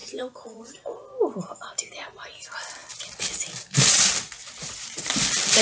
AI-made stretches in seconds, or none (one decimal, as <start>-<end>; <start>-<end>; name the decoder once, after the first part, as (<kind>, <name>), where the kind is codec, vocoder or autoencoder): 0.0-0.7 (vocoder, Vocos); 4.6-5.1